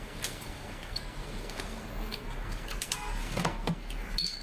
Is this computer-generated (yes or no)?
yes